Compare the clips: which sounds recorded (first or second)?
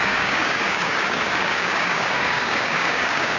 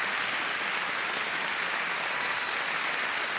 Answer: second